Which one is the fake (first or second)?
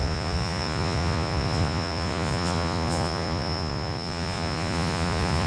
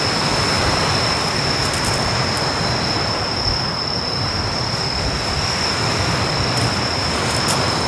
first